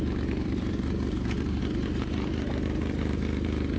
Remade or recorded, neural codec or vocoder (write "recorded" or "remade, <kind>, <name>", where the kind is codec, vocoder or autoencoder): remade, vocoder, BigVGAN v2